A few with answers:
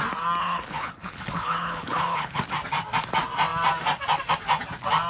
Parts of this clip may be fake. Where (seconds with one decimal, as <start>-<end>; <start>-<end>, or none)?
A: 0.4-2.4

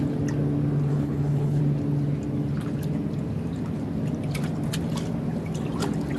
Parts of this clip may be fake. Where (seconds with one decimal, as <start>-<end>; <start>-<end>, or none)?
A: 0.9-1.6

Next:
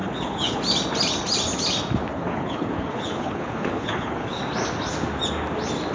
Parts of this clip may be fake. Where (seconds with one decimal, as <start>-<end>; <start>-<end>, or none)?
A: 0.0-0.6; 2.1-4.4

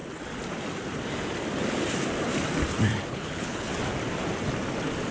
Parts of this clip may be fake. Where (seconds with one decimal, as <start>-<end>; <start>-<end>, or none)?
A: 3.1-3.7

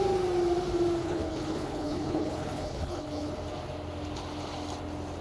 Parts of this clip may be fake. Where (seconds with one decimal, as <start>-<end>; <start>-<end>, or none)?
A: 1.0-3.3

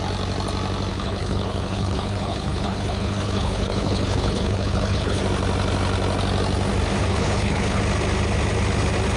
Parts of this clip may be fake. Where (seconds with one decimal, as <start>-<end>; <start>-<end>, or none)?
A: 0.9-5.2; 7.1-7.8